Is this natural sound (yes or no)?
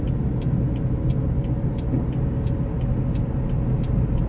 yes